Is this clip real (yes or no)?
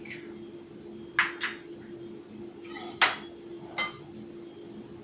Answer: yes